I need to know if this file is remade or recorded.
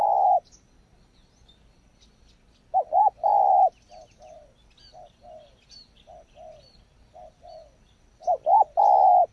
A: recorded